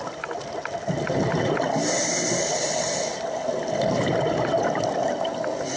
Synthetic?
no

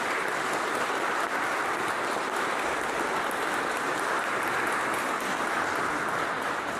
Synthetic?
no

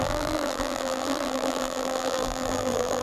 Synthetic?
yes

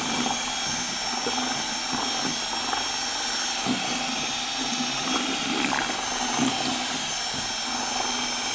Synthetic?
no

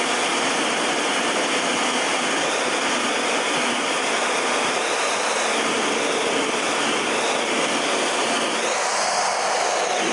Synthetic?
no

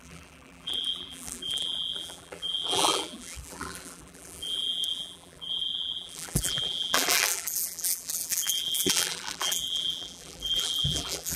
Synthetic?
yes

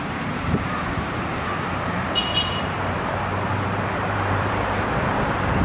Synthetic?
yes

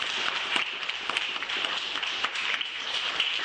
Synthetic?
yes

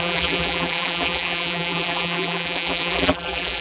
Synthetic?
yes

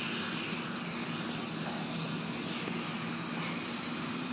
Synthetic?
no